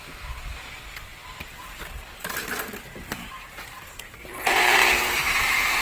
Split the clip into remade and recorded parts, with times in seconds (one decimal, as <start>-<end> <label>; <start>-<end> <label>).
0.0-1.1 recorded; 1.1-1.8 remade; 1.8-2.2 recorded; 2.2-5.8 remade